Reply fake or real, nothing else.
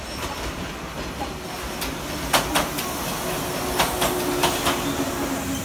real